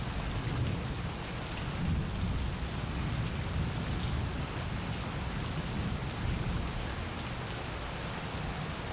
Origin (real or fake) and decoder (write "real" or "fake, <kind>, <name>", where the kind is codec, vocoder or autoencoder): real